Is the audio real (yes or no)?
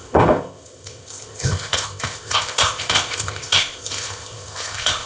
no